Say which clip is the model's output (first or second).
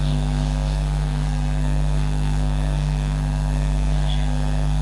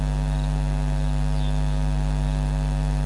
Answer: first